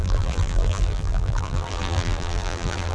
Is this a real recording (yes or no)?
no